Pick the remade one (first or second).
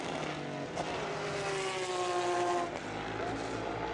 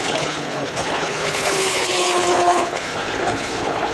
second